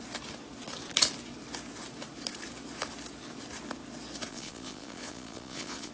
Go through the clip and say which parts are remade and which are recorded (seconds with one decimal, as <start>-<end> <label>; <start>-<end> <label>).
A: 0.0-4.3 recorded; 4.3-5.9 remade